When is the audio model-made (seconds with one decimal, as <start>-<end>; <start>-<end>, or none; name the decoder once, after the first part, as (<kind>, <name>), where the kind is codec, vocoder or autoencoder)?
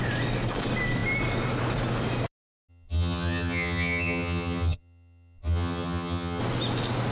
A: 2.7-6.4 (vocoder, HiFi-GAN)